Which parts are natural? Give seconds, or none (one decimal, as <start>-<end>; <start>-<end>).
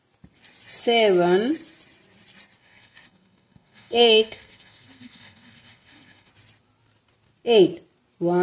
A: 0.0-2.6; 6.3-8.4